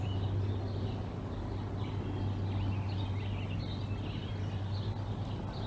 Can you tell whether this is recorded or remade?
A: recorded